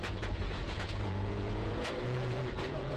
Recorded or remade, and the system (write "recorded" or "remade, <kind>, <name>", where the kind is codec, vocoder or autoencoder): remade, vocoder, Vocos